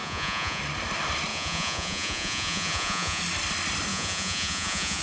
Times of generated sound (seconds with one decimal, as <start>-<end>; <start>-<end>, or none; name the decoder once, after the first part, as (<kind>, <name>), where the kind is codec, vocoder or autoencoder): 0.0-0.6 (vocoder, Vocos); 1.3-3.2; 3.9-5.0

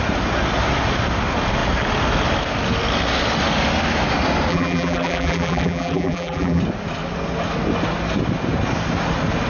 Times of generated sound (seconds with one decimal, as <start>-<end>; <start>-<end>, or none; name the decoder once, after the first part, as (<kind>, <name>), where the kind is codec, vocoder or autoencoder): 4.5-6.6 (vocoder, BigVGAN v2)

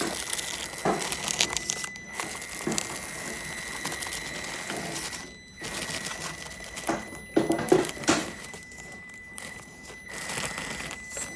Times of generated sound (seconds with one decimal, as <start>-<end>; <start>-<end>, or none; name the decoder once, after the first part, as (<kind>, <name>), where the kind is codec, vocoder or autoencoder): 8.2-9.8 (vocoder, BigVGAN v2)

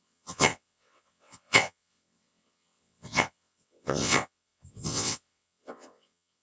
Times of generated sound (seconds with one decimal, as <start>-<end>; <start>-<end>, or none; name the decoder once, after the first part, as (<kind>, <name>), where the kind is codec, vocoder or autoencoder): 0.0-6.4 (vocoder, WaveNeXt)

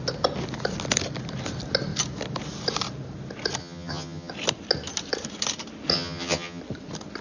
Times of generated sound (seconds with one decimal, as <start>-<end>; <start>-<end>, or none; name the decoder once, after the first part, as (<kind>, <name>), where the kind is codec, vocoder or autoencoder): 3.6-4.3 (vocoder, HiFi-GAN); 5.9-6.6

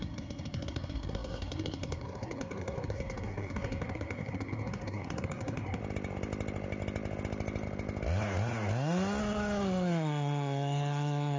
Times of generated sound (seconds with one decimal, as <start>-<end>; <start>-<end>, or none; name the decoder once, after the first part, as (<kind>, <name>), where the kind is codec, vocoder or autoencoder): 0.0-5.8 (codec, SNAC); 9.2-11.4

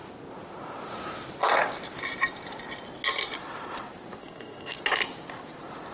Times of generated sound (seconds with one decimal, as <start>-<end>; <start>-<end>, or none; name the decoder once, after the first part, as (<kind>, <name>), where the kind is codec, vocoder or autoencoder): 4.2-4.8 (codec, SNAC)

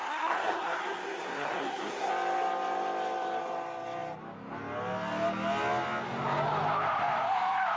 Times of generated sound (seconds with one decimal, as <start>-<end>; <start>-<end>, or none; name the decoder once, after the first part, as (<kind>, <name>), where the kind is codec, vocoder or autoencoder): 0.0-2.1 (codec, SNAC)